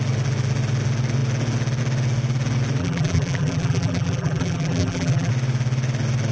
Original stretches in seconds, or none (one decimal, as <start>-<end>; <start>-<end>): 0.0-2.8; 5.3-6.3